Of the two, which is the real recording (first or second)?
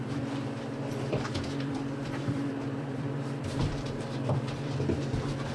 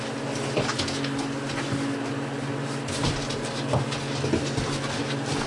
second